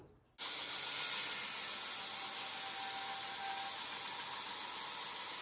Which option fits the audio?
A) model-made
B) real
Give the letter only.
B